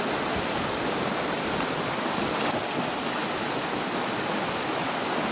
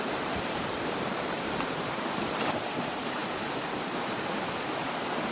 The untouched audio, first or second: first